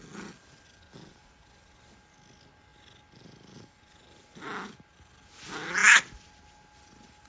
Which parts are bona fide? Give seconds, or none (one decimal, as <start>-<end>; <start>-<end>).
0.0-7.3